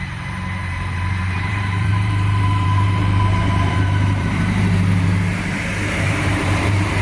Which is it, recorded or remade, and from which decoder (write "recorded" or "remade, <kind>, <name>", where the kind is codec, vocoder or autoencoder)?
remade, vocoder, BigVGAN v2